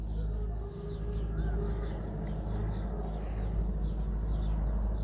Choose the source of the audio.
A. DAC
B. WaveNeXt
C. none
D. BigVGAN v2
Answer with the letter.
C